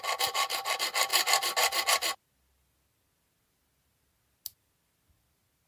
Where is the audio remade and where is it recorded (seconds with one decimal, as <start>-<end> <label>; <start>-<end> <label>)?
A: 0.0-5.7 recorded